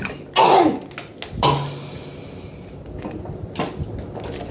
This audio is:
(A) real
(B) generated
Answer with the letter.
A